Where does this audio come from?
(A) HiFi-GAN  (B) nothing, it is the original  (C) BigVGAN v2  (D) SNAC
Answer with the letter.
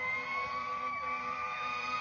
C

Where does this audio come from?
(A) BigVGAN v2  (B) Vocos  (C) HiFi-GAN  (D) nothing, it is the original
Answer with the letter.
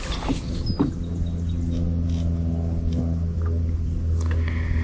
D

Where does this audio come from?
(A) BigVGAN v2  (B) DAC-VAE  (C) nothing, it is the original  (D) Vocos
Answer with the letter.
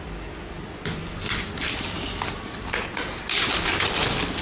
A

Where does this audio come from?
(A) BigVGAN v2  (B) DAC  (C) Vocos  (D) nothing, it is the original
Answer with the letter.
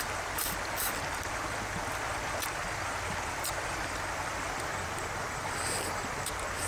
A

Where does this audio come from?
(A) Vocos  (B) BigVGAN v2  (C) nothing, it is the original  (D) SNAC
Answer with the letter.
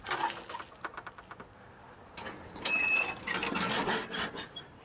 C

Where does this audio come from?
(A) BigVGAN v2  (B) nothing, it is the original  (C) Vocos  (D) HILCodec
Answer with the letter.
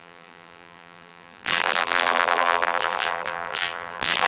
A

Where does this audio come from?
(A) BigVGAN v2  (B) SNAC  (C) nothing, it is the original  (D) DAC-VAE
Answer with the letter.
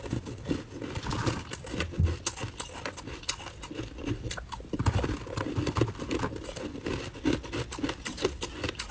C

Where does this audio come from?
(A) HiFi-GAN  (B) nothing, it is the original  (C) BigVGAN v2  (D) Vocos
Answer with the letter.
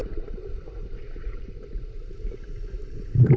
C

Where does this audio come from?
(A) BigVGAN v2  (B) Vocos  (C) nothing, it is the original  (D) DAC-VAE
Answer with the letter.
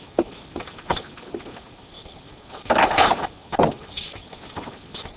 C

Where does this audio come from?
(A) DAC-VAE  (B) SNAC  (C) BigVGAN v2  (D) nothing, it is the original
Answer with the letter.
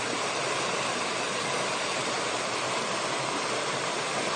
D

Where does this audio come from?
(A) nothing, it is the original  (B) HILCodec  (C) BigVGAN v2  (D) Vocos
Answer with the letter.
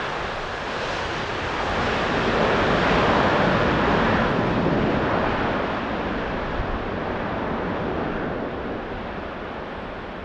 A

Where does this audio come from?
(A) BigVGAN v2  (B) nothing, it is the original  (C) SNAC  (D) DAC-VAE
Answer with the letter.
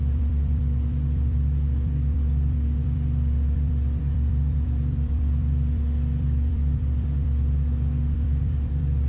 A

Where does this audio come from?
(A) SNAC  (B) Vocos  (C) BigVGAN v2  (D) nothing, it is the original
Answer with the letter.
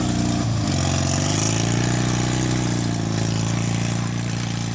D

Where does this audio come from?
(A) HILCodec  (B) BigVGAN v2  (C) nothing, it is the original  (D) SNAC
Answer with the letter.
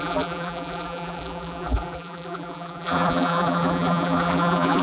B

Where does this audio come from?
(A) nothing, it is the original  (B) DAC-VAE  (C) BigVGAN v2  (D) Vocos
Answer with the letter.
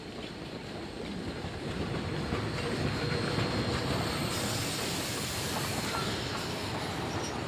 A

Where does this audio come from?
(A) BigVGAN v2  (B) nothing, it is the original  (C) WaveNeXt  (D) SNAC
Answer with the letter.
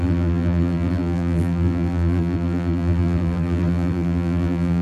A